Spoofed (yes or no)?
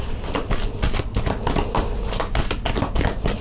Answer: no